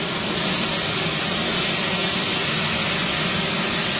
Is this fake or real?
real